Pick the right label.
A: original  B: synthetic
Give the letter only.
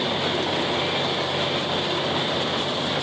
A